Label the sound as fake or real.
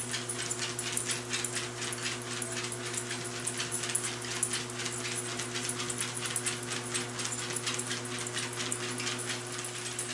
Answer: real